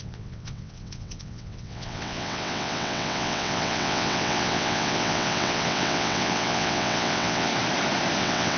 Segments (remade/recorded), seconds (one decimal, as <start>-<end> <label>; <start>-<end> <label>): 0.0-7.5 remade; 7.5-8.2 recorded; 8.2-8.6 remade